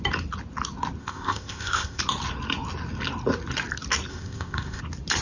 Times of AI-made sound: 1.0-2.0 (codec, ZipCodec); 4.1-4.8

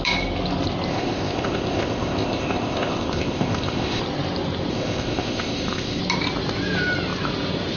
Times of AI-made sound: 0.9-4.0 (codec, ZipCodec); 4.7-6.0

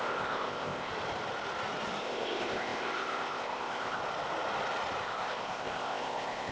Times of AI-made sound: 0.0-0.9 (codec, ZipCodec); 2.0-4.0; 5.0-6.5

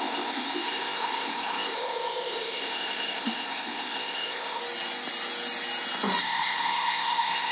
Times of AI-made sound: 0.0-4.6 (codec, ZipCodec); 6.2-7.5

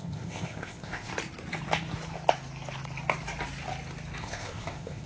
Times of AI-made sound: 0.0-1.1 (codec, ZipCodec); 4.2-5.1